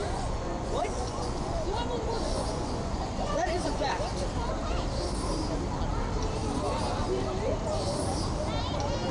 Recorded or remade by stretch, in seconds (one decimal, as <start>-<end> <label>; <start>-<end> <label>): 0.0-3.9 remade; 3.9-9.1 recorded